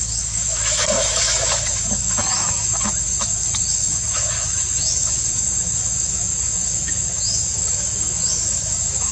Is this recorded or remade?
remade